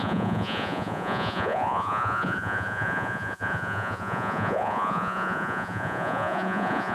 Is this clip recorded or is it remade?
remade